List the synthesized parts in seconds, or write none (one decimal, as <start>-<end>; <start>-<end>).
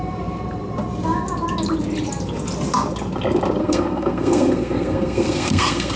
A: 3.6-6.0